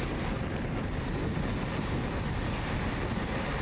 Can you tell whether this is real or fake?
real